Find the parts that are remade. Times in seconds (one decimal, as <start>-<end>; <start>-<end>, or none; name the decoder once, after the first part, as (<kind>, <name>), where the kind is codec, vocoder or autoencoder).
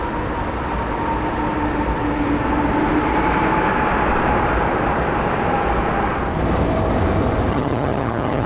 7.5-8.5 (vocoder, HiFi-GAN)